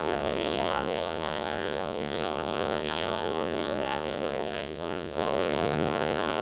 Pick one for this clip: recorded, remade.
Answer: remade